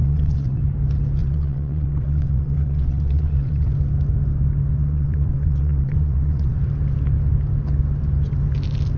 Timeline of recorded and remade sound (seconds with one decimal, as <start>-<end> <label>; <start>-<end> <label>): 0.0-0.6 remade; 0.6-1.2 recorded; 1.2-3.7 remade; 3.7-4.8 recorded; 4.8-6.6 remade; 6.6-9.0 recorded